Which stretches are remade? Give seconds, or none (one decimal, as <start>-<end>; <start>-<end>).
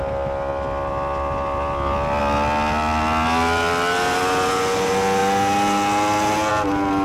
none